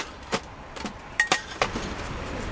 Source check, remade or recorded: recorded